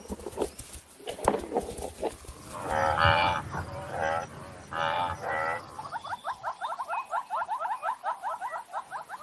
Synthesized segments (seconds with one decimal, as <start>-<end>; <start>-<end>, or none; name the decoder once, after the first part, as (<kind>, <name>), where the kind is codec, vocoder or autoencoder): none